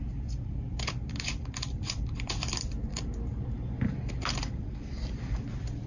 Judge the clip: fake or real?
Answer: fake